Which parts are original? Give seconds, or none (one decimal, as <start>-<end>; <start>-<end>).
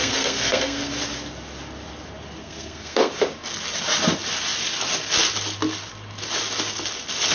0.9-2.4; 3.1-7.3